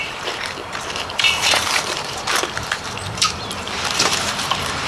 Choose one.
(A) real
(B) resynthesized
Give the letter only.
B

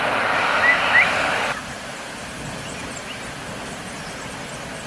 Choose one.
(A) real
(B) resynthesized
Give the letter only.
A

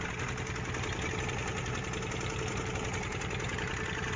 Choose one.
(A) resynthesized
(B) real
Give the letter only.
B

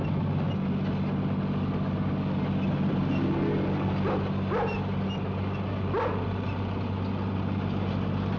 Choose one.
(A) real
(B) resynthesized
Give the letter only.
A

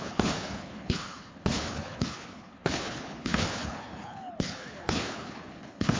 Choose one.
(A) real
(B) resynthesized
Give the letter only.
B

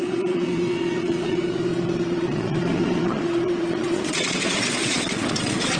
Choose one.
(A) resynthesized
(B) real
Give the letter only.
A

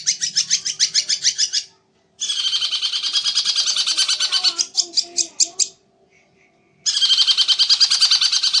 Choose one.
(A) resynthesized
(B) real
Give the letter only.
B